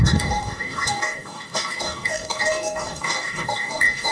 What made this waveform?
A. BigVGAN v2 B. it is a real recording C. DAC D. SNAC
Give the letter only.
C